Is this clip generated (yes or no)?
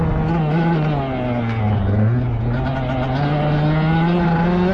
no